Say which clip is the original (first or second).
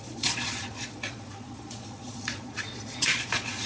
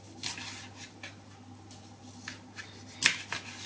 second